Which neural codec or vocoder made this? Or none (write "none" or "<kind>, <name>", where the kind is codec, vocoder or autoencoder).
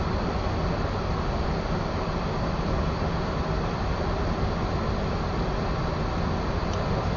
none